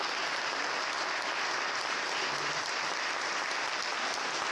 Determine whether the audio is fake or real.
real